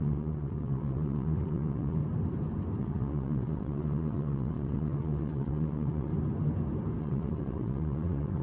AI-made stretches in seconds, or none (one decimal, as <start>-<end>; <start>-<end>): 0.0-2.0; 2.8-6.1; 7.0-8.4